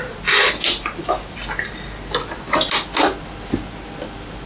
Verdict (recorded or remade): recorded